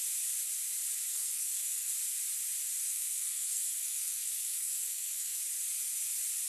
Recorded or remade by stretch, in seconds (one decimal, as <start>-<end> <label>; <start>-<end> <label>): 0.0-1.1 recorded; 1.1-1.9 remade; 1.9-2.8 recorded; 2.8-5.4 remade; 5.4-6.5 recorded